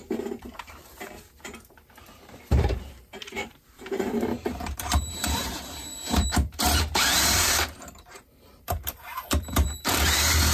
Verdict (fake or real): fake